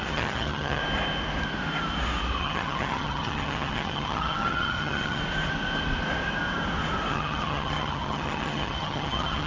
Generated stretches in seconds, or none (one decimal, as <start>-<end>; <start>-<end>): 0.0-0.8; 2.4-5.2; 7.1-9.5